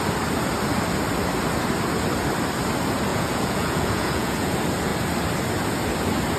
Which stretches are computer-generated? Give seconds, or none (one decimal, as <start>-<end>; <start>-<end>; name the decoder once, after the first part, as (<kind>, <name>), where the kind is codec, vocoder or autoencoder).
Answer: 3.1-4.5 (vocoder, Vocos)

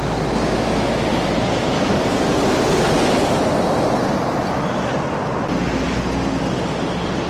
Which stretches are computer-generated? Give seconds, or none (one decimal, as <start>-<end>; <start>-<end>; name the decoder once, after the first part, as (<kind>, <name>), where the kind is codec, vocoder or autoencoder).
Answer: none

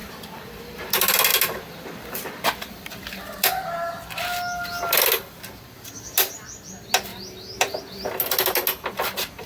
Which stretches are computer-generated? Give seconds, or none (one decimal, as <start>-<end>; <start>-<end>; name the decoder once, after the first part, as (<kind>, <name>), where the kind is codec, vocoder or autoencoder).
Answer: 0.0-0.9 (vocoder, BigVGAN v2); 7.1-7.8